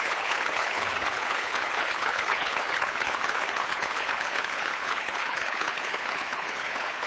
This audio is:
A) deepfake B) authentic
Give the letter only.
A